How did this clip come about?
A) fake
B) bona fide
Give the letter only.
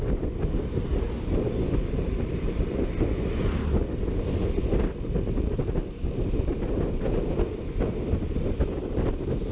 B